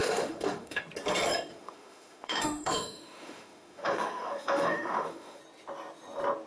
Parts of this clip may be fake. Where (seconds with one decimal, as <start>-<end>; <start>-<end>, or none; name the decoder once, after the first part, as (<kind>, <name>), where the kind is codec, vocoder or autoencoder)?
0.0-0.8 (autoencoder, DAC-VAE); 1.5-5.4

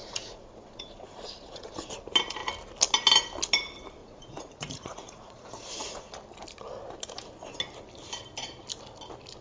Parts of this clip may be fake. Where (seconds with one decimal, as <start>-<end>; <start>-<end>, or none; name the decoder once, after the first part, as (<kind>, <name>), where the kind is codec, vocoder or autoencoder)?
0.0-1.9 (vocoder, Vocos); 4.0-6.1

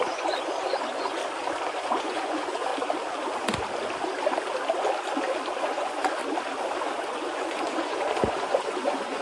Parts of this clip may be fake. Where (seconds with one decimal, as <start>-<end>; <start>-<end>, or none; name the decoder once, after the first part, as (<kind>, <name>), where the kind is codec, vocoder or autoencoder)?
0.0-1.2 (vocoder, Vocos); 1.7-2.7; 5.6-6.2; 6.8-9.2

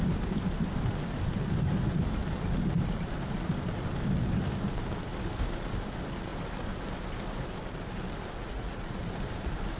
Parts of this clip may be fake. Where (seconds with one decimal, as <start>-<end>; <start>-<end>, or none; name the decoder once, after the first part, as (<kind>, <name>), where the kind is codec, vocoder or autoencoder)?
8.4-9.0 (vocoder, Vocos)

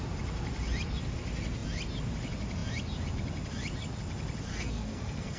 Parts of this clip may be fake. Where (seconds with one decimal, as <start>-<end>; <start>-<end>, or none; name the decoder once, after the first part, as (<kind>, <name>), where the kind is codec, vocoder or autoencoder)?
4.5-5.4 (codec, SNAC)

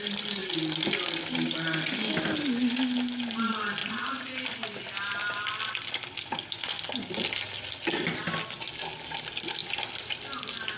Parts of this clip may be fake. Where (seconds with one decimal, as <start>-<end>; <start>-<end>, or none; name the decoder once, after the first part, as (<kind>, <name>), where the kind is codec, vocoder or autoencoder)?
none